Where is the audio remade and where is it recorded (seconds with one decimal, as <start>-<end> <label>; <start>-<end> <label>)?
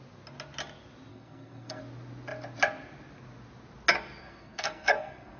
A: 0.0-1.1 recorded; 1.1-1.8 remade; 1.8-4.2 recorded; 4.2-5.4 remade